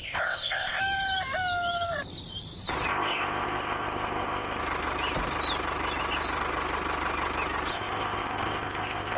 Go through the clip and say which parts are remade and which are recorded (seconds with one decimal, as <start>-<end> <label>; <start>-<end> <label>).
0.0-0.8 remade; 0.8-2.9 recorded; 2.9-4.6 remade; 4.6-7.7 recorded; 7.7-9.2 remade